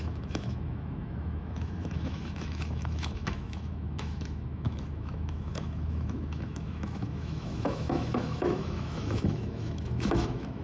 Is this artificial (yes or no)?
yes